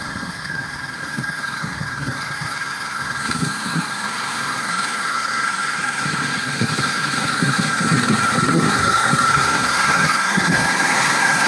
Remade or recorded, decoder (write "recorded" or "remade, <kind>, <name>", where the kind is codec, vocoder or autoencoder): remade, codec, SNAC